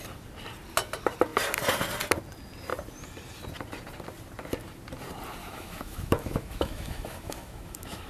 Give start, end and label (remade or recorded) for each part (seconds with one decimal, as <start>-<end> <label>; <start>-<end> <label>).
0.0-5.4 recorded; 5.4-8.1 remade